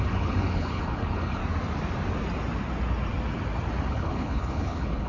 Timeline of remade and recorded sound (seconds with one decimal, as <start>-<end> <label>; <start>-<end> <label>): 0.0-1.4 remade; 1.4-3.9 recorded; 3.9-5.1 remade